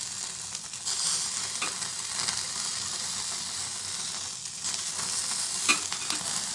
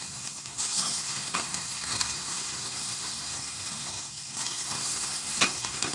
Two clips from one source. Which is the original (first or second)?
first